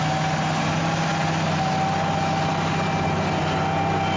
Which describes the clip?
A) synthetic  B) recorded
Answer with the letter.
B